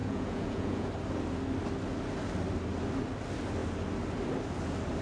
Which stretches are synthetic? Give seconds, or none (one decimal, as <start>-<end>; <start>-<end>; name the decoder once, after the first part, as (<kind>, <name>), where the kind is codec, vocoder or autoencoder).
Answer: 0.0-0.9 (vocoder, Vocos)